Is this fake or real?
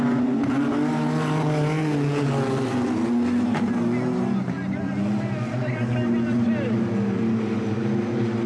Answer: real